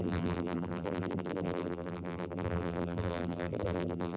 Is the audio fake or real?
fake